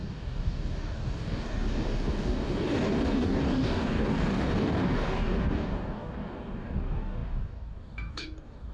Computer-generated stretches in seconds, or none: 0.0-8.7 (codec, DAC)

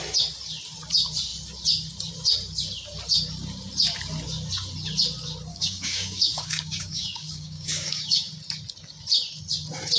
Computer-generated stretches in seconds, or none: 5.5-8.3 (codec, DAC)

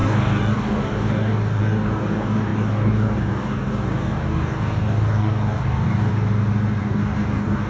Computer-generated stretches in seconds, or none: 0.0-6.1 (codec, DAC); 6.8-7.7